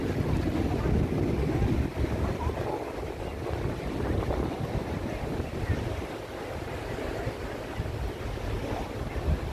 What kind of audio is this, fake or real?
real